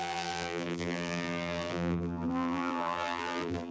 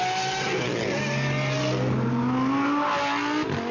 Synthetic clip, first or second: first